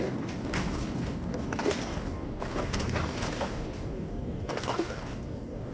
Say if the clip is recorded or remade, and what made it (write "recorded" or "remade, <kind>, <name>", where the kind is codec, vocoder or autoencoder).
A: remade, codec, DAC